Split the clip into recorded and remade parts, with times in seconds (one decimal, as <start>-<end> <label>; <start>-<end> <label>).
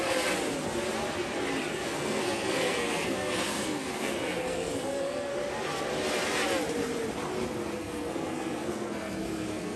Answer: 0.0-1.7 recorded; 1.7-5.3 remade; 5.3-7.8 recorded; 7.8-9.8 remade